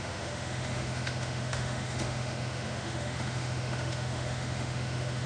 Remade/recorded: remade